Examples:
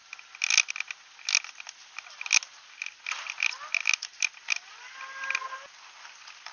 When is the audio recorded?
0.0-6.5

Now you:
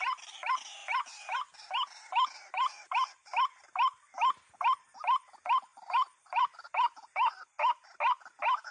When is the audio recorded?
0.0-5.7; 7.9-8.7

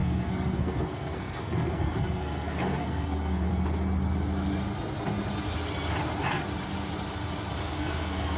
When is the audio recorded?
3.5-7.6

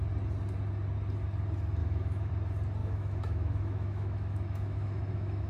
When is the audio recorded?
0.0-1.8; 2.3-2.8